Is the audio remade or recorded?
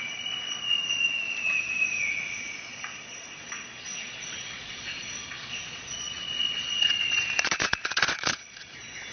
remade